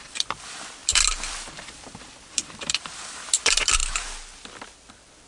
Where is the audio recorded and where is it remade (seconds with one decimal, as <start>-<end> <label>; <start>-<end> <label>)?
0.0-3.8 remade; 3.8-5.3 recorded